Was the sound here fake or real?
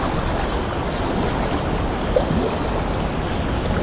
real